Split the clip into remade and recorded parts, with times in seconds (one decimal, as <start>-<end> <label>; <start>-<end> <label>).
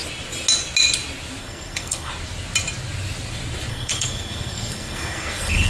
0.0-1.4 recorded; 1.4-2.1 remade; 2.1-3.7 recorded; 3.7-5.7 remade